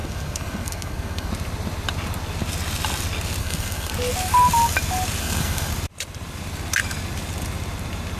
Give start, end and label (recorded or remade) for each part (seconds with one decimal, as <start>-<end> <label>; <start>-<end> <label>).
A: 0.0-1.3 remade; 1.3-3.4 recorded; 3.4-3.9 remade; 3.9-5.2 recorded; 5.2-5.7 remade; 5.7-8.2 recorded